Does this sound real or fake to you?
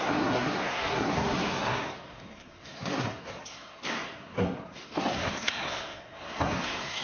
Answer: fake